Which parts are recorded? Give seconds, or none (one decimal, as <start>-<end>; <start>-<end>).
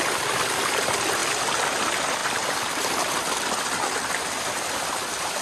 1.2-1.8